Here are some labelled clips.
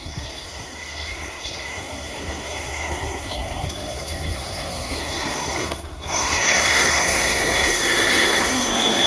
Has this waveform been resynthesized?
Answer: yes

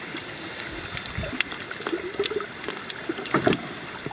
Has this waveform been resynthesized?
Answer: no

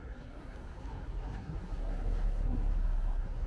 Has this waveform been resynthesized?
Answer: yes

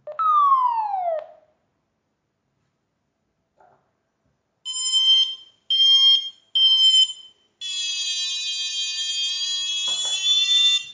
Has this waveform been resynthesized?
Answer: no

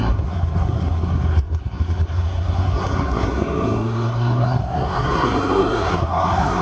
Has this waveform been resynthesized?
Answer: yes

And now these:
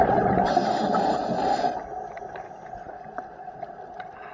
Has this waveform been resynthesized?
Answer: no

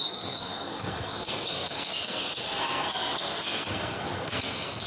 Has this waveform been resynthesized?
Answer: yes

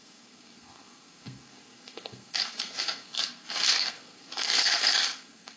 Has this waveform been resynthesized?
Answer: yes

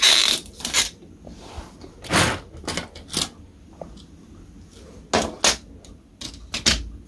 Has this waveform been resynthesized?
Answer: no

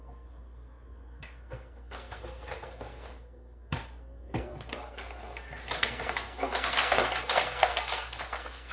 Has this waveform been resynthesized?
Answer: yes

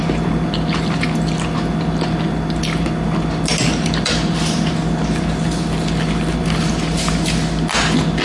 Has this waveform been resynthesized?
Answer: no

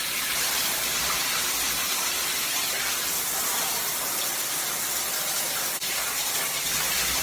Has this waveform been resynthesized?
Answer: no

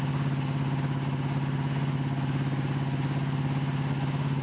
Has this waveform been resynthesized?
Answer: no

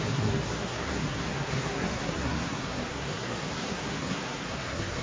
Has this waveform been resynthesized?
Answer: yes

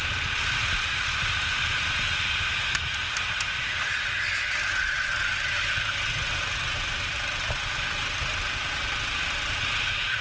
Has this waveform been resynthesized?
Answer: no